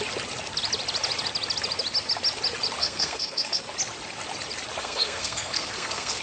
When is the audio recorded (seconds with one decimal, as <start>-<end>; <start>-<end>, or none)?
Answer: 0.0-2.8; 3.6-4.8